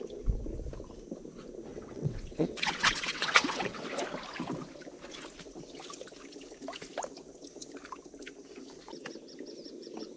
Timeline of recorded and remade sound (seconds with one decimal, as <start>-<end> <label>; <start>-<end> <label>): 0.0-1.7 recorded; 1.7-3.8 remade; 3.8-10.2 recorded